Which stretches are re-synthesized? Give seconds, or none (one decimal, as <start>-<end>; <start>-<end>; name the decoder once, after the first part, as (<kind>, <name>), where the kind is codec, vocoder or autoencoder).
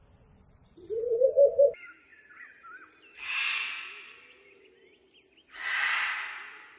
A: 0.6-1.3 (vocoder, BigVGAN v2); 2.1-3.4